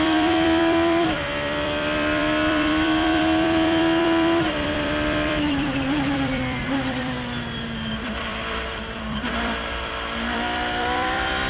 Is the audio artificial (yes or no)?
yes